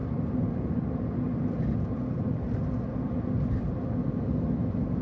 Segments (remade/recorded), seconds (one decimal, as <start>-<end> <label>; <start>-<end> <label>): 0.0-5.0 recorded